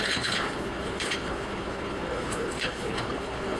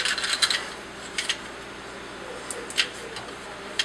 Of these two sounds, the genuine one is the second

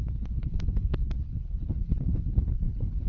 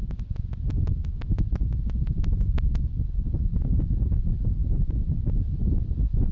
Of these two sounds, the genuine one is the second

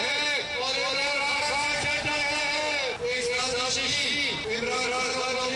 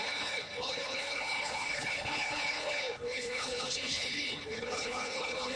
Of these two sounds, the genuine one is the first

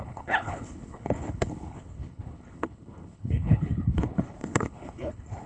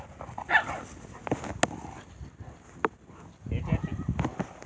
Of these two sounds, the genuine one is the second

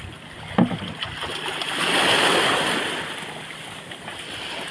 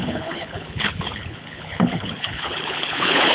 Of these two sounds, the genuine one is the first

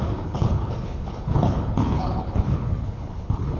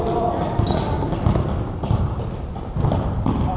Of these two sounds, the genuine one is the second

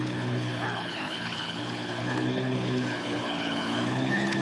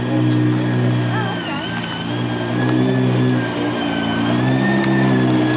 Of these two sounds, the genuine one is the second